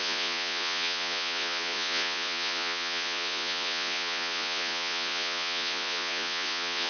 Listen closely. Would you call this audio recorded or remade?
remade